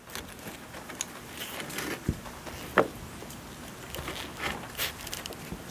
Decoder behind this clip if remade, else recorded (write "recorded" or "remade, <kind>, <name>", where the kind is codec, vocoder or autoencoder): recorded